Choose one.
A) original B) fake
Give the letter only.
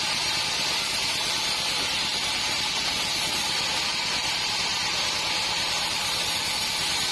B